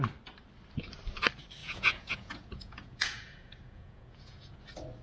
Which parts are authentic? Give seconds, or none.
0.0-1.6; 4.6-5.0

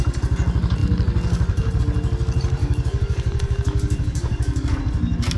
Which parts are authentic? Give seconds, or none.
0.0-2.6; 4.8-5.4

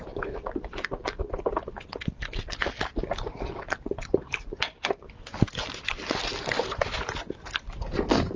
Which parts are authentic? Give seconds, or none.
0.0-8.4

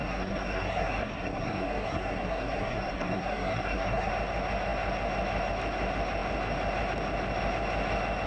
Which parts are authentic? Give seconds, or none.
4.1-8.3